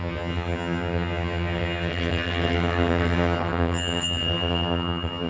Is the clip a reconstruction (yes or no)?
yes